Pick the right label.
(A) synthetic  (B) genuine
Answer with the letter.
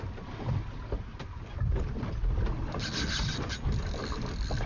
B